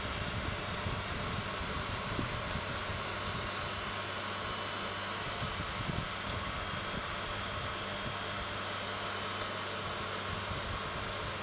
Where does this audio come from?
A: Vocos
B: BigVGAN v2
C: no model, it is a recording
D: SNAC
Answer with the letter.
C